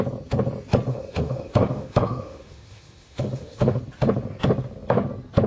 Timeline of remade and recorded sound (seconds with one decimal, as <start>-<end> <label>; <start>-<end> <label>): 0.0-0.9 recorded; 0.9-3.8 remade; 3.8-5.5 recorded